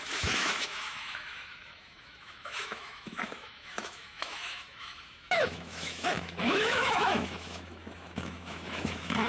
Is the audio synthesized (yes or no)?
yes